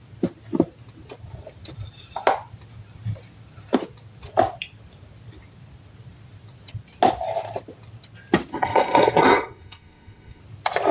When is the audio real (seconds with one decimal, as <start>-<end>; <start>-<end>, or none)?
0.0-8.5; 10.4-10.9